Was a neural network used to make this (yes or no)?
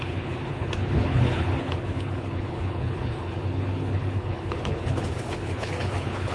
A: yes